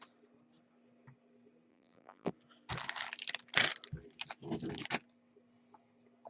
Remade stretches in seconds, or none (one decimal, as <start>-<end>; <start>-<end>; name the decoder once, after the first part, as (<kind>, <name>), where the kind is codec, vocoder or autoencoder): 1.7-2.3 (vocoder, BigVGAN v2)